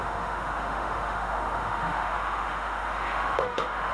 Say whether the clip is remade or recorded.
remade